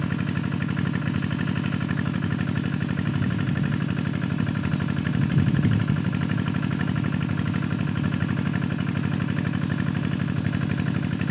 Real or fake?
real